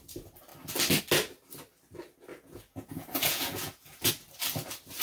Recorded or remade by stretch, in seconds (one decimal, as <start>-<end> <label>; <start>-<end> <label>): 0.0-2.3 recorded; 2.3-4.1 remade; 4.1-5.0 recorded